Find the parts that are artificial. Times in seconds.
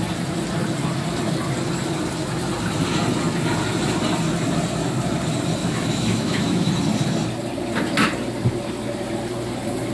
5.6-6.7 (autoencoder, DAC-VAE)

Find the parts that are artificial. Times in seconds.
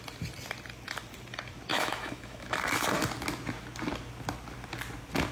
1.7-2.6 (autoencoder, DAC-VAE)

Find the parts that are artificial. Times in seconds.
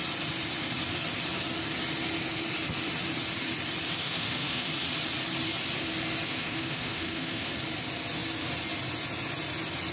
4.0-4.7 (autoencoder, DAC-VAE); 6.4-7.5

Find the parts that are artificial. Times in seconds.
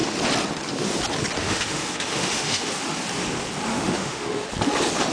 1.4-2.7 (autoencoder, DAC-VAE); 3.7-4.5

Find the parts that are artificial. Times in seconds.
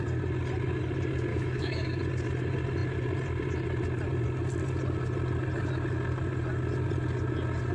1.3-2.0 (autoencoder, DAC-VAE)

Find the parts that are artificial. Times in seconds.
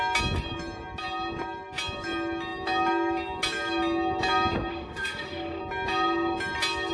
4.7-5.6 (autoencoder, DAC-VAE)